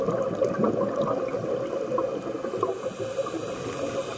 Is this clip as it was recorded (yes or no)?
yes